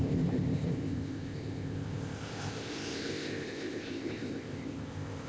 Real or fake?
fake